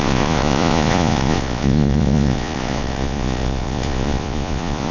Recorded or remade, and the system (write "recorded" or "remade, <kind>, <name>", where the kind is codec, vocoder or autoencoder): remade, vocoder, Vocos